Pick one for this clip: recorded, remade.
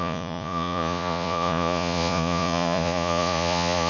remade